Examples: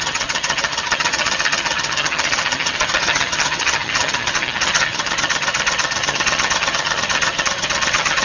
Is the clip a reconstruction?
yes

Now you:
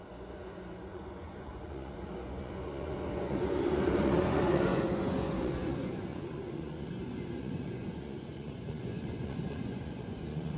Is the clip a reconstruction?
yes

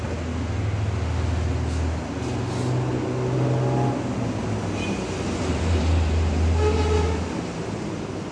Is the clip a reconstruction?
no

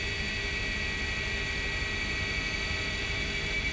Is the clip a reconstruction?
no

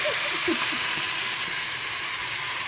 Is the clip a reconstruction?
yes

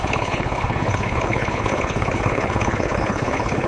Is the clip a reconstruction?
yes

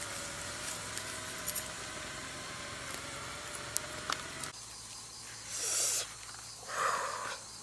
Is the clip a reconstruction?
no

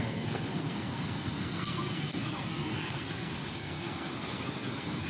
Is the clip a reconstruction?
yes